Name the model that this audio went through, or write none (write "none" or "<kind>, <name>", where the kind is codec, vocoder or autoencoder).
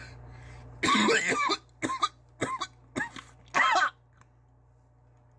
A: none